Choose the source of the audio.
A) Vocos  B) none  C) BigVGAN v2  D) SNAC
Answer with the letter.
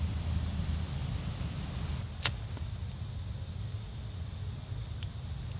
B